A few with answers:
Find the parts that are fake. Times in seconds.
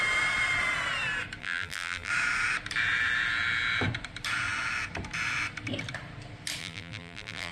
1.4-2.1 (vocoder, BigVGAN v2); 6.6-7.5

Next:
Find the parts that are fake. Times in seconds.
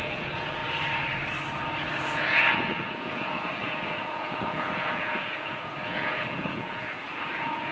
0.0-0.6 (vocoder, Vocos); 2.0-7.7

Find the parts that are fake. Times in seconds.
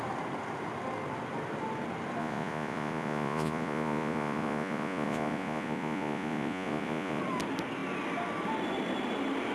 2.2-7.2 (vocoder, Vocos)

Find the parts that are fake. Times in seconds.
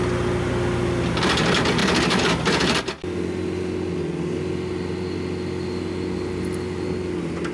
none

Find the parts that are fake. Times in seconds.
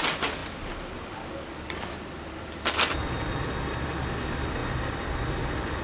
none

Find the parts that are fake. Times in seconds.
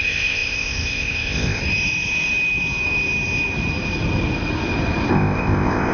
0.0-1.6 (codec, ZipCodec); 5.1-5.9